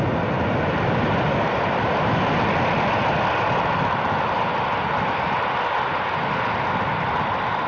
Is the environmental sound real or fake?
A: real